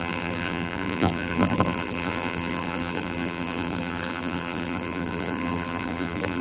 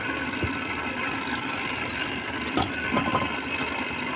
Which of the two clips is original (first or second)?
second